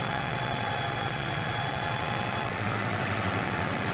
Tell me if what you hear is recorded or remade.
remade